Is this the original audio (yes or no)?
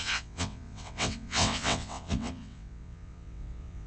no